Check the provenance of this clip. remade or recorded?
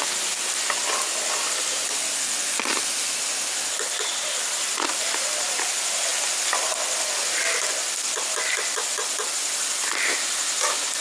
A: recorded